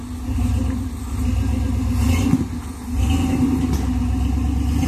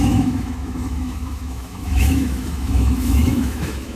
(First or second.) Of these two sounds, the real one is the first